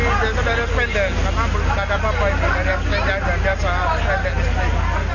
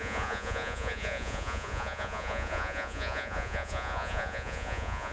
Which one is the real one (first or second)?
first